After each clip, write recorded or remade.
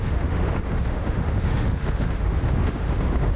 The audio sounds remade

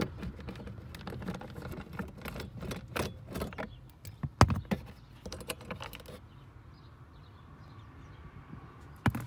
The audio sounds recorded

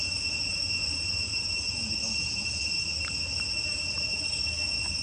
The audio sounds recorded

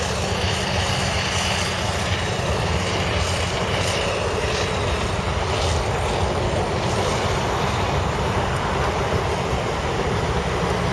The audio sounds recorded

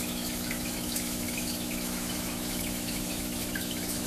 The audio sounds remade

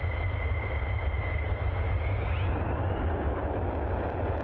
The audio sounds recorded